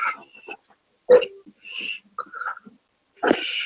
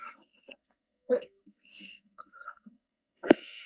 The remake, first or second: second